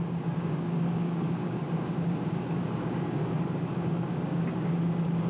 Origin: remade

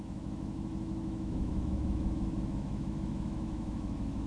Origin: remade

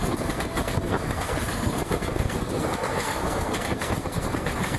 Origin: remade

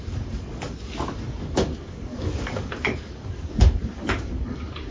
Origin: remade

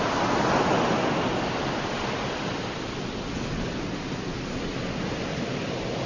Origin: recorded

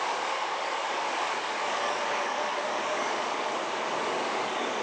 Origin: remade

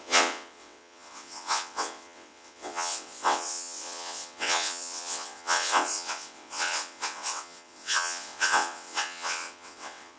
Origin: remade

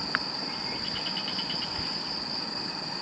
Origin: recorded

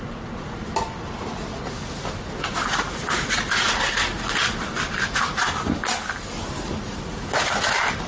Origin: recorded